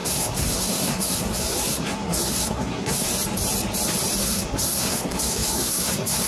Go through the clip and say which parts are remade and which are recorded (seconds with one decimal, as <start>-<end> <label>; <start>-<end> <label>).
0.0-3.1 remade; 3.1-4.2 recorded; 4.2-6.3 remade